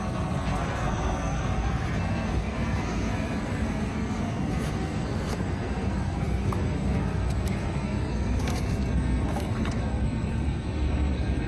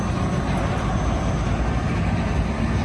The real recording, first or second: second